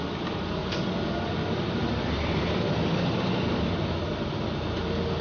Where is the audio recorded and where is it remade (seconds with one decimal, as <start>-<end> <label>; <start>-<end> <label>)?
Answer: 0.0-0.6 recorded; 0.6-3.7 remade; 3.7-5.2 recorded